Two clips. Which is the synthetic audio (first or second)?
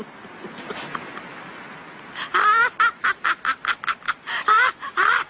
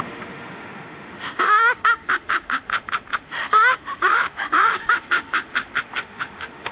second